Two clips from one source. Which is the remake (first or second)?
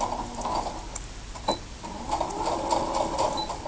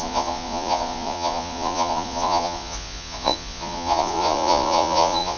second